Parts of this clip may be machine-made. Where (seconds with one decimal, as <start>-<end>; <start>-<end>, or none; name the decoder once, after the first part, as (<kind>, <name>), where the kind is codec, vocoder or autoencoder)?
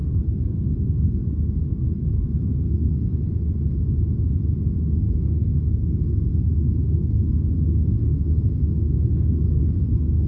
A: 0.0-1.2 (codec, SNAC); 1.7-3.1; 5.0-10.3